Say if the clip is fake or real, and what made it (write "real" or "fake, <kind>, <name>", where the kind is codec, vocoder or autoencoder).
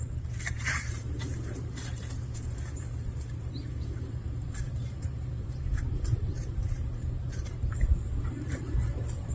fake, vocoder, BigVGAN v2